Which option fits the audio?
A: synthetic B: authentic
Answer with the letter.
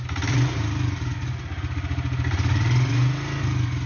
B